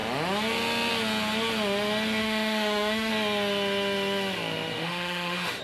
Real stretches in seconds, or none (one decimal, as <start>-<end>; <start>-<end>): 0.0-2.2; 3.1-4.7